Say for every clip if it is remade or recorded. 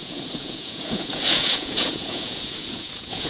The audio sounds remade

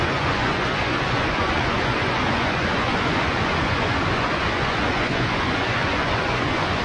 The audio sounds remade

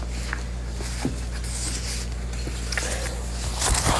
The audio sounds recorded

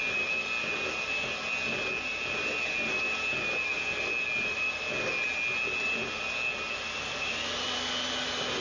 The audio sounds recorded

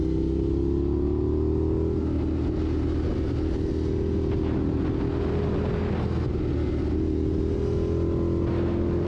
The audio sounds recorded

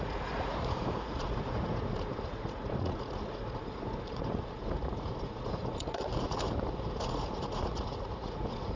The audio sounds remade